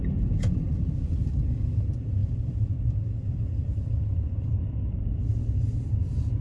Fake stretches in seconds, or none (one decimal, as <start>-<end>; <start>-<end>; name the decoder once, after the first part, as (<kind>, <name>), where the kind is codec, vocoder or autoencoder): 2.2-6.0 (vocoder, BigVGAN v2)